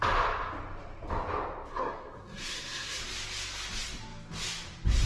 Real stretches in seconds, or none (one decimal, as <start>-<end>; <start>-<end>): 0.0-1.7; 3.0-5.1